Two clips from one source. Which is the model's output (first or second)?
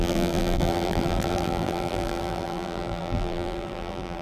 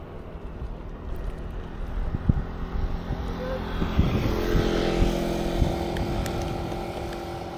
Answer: first